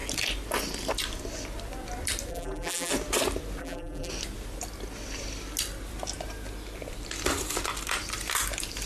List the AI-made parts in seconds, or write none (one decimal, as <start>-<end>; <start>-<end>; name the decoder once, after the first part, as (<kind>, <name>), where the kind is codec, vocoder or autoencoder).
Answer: 2.3-2.9 (vocoder, BigVGAN v2); 3.6-4.1